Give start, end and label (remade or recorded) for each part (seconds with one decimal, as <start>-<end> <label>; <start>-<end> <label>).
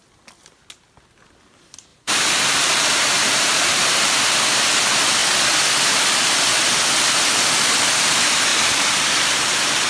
0.0-1.9 recorded; 1.9-4.3 remade; 4.3-8.5 recorded; 8.5-9.9 remade